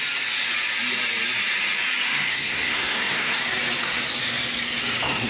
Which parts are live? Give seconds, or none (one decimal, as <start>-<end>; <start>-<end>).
0.0-2.3; 3.4-5.3